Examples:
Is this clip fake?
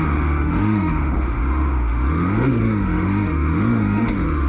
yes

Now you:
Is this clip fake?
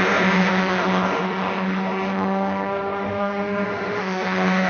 yes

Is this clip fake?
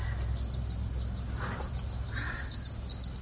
no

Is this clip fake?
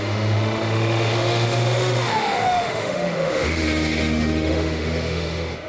yes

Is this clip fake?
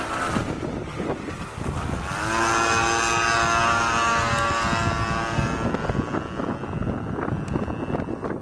no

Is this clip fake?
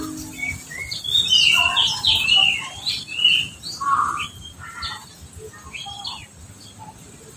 no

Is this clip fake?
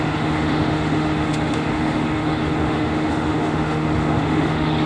yes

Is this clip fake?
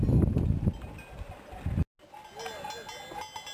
no